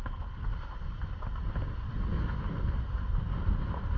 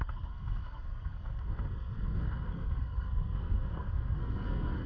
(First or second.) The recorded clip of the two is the first